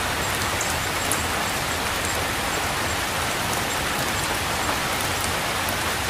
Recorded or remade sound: recorded